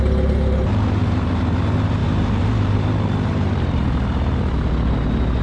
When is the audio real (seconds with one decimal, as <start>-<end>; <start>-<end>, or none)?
none